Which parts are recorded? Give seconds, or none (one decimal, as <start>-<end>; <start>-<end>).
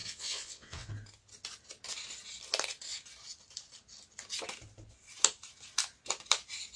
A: 0.9-6.8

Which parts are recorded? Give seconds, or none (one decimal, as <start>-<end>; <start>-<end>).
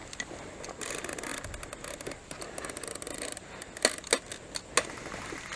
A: 0.0-5.6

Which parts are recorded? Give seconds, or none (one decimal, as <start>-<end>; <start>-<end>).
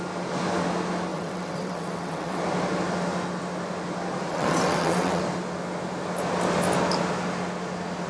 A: 0.0-1.1; 2.4-4.3; 5.2-8.1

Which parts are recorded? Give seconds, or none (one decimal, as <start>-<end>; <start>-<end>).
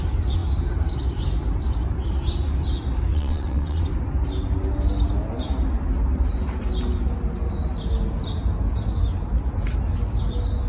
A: 0.0-3.1; 3.8-10.7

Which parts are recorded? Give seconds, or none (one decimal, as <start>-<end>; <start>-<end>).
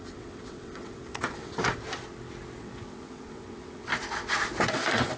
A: 1.5-2.6; 3.9-4.7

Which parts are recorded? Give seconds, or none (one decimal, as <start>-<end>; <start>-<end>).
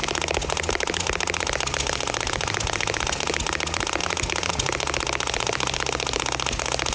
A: 0.0-6.9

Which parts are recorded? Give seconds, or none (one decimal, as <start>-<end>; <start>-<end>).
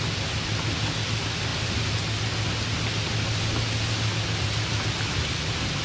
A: 0.0-5.8